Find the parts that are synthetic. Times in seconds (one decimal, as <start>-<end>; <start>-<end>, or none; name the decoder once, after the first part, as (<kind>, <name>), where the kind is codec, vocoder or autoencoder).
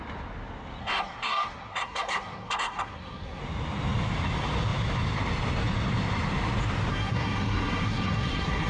0.8-3.4 (codec, SNAC); 6.9-8.7